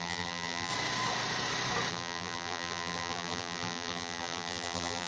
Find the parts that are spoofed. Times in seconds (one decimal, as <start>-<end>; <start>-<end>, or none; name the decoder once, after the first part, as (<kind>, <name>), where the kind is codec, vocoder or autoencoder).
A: 0.0-0.7 (vocoder, BigVGAN v2); 1.9-5.1